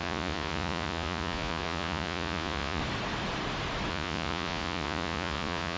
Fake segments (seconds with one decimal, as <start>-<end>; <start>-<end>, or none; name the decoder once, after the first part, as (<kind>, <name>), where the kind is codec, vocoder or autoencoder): 0.0-2.8 (vocoder, Vocos); 3.9-5.8